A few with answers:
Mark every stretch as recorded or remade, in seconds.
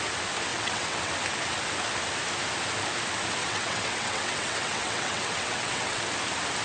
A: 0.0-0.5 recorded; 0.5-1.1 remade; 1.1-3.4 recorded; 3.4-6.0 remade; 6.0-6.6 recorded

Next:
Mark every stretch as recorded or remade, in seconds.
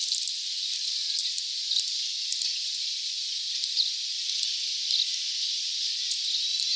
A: 0.0-1.0 recorded; 1.0-1.5 remade; 1.5-6.8 recorded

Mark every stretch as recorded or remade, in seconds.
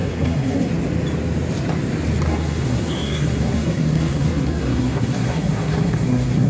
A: 0.0-0.7 remade; 0.7-2.3 recorded; 2.3-6.5 remade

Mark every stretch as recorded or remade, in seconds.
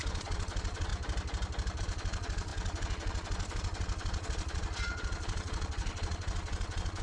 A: 0.0-0.9 remade; 0.9-1.8 recorded; 1.8-7.0 remade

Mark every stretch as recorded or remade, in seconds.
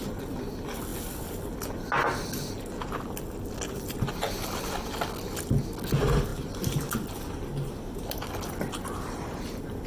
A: 0.0-9.9 recorded